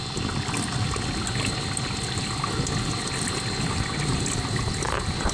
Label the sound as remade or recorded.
recorded